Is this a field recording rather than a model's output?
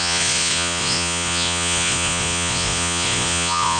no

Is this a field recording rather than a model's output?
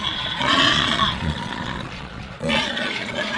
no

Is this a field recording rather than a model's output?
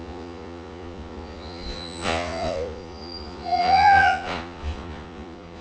no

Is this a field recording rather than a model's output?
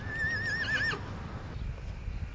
yes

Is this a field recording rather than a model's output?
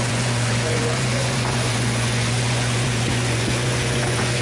no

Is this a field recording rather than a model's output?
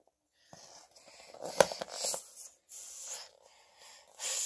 yes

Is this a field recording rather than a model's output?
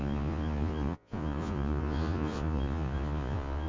no